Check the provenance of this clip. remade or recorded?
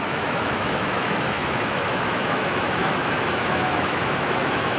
remade